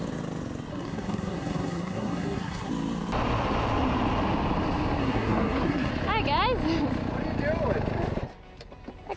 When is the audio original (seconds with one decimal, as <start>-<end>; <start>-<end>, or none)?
0.0-0.7; 2.7-5.0; 5.9-9.2